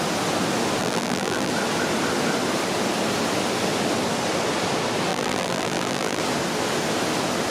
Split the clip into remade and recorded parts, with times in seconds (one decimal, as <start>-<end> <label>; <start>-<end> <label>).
0.0-0.8 recorded; 0.8-1.5 remade; 1.5-5.1 recorded; 5.1-6.2 remade; 6.2-7.5 recorded